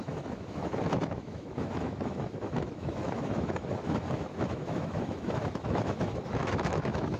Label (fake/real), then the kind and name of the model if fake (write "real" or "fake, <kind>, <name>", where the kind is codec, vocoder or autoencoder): fake, autoencoder, DAC-VAE